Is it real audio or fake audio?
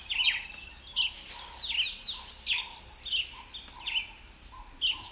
real